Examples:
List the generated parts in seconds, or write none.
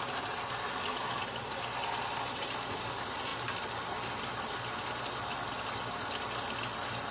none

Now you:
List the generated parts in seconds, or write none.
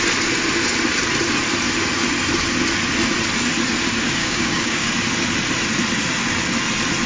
4.2-4.9 (codec, DAC)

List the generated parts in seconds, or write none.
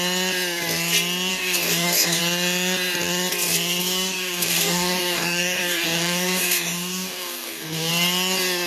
1.3-2.2 (codec, DAC); 3.8-7.9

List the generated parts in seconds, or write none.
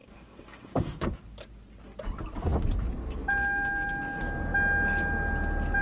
0.0-1.2 (codec, DAC); 3.4-4.0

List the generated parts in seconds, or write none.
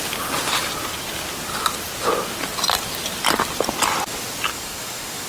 4.5-5.3 (codec, DAC)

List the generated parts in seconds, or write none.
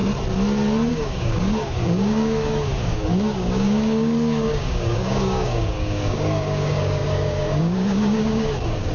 0.9-8.9 (codec, DAC)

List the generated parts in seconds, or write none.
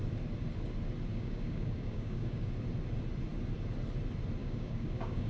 1.1-2.5 (codec, DAC); 4.4-5.3